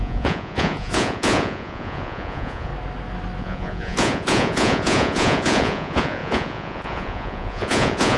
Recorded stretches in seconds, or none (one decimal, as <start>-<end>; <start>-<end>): 2.7-3.4